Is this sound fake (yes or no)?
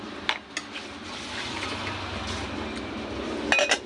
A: no